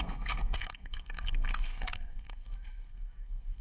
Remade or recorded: remade